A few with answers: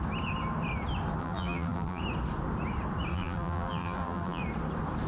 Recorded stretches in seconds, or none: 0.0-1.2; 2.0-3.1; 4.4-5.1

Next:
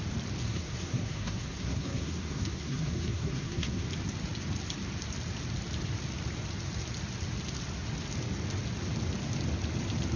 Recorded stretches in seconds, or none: 0.0-0.4; 3.9-10.2

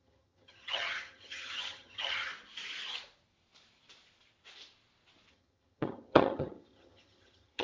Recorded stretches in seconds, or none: 2.3-5.3

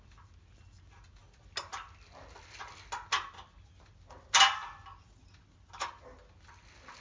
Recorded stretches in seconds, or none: 0.0-7.0

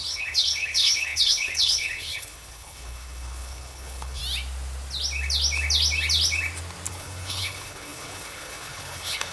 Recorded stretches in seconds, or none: 4.2-6.9

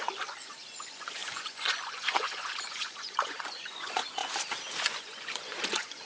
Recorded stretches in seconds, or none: 4.2-4.8

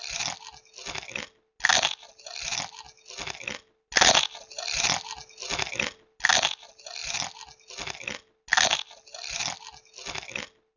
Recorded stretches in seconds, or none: 0.0-10.8

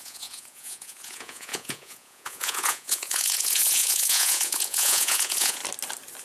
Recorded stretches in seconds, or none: 5.6-6.2